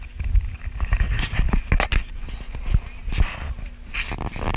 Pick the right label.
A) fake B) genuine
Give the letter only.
B